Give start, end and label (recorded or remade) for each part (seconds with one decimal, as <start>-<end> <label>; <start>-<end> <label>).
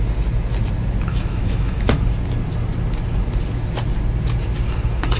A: 0.0-1.1 recorded; 1.1-2.0 remade; 2.0-5.2 recorded